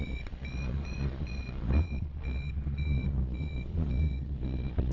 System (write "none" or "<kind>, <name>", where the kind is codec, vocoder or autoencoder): vocoder, Vocos